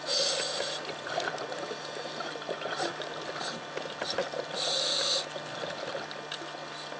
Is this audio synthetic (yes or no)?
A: no